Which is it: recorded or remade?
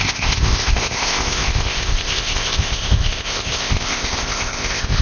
remade